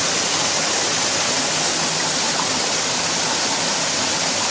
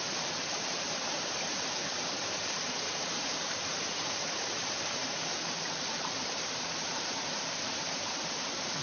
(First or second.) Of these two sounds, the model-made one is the second